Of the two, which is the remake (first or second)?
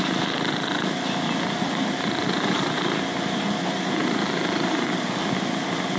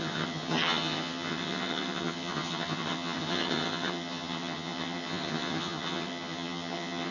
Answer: second